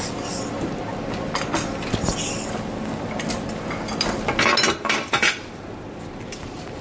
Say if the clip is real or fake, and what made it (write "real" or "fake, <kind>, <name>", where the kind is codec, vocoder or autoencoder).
real